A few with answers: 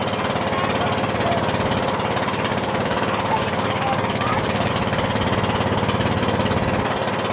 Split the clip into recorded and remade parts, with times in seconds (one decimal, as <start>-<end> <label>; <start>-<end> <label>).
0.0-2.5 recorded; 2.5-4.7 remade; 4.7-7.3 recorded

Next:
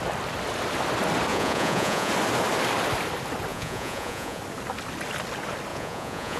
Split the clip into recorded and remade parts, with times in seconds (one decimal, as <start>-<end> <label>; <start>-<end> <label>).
0.0-1.3 recorded; 1.3-2.1 remade; 2.1-3.5 recorded; 3.5-4.4 remade; 4.4-5.7 recorded; 5.7-6.4 remade

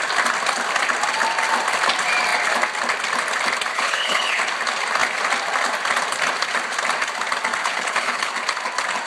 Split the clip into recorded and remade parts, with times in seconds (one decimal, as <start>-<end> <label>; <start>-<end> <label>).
0.0-3.7 recorded; 3.7-4.4 remade; 4.4-7.6 recorded; 7.6-8.3 remade; 8.3-9.1 recorded

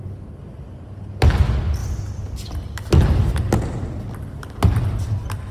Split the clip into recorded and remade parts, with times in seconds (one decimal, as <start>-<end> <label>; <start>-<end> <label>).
0.0-5.5 recorded

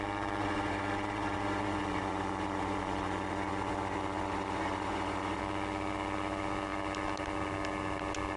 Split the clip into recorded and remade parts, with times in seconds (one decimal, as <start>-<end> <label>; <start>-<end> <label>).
0.0-0.4 recorded; 0.4-5.4 remade; 5.4-8.4 recorded

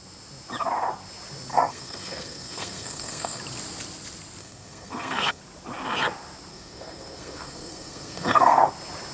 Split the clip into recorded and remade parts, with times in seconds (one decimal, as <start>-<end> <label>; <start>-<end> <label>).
0.0-1.5 recorded; 1.5-3.4 remade; 3.4-4.4 recorded; 4.4-5.4 remade; 5.4-6.5 recorded; 6.5-8.7 remade; 8.7-9.1 recorded